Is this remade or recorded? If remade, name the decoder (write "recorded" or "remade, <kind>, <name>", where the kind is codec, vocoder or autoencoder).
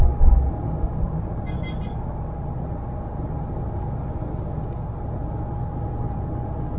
recorded